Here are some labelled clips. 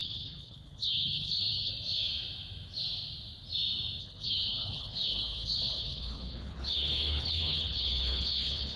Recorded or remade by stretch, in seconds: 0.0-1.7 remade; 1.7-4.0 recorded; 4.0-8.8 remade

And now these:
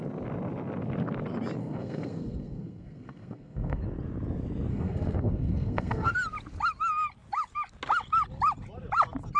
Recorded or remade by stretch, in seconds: 0.0-1.6 recorded; 1.6-3.8 remade; 3.8-4.7 recorded; 4.7-6.1 remade; 6.1-9.4 recorded

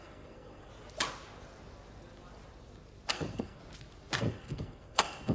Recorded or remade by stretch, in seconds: 0.0-0.7 remade; 0.7-3.1 recorded; 3.1-3.6 remade; 3.6-4.2 recorded; 4.2-5.3 remade

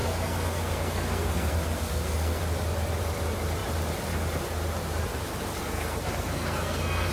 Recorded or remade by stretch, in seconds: 0.0-2.4 remade; 2.4-5.6 recorded; 5.6-7.1 remade

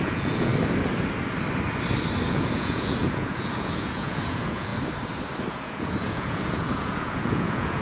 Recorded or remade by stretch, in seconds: 0.0-0.5 remade; 0.5-2.3 recorded; 2.3-4.7 remade; 4.7-5.5 recorded; 5.5-7.8 remade

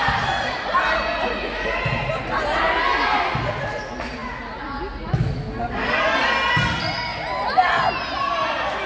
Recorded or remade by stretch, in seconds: 0.0-8.9 recorded